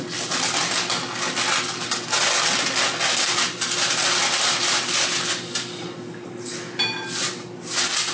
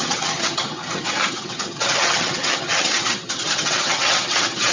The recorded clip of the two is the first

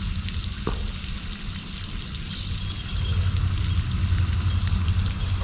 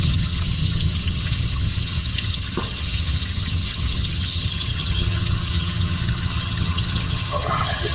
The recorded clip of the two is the first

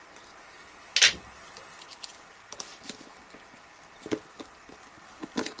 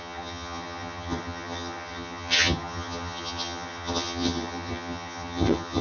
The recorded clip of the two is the first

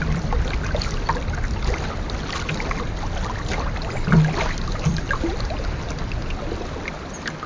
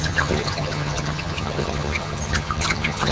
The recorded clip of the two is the first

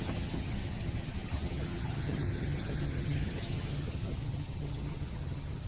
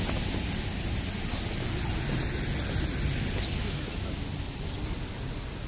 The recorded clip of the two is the second